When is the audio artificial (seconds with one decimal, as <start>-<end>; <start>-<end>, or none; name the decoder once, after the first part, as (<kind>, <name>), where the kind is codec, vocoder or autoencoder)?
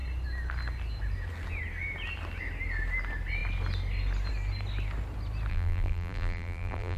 5.5-7.0 (vocoder, BigVGAN v2)